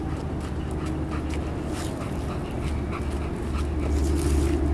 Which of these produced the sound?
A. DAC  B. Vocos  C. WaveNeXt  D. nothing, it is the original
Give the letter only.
D